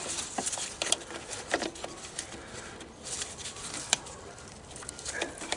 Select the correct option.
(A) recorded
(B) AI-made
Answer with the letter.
B